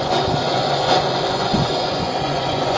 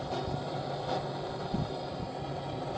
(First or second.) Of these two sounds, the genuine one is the second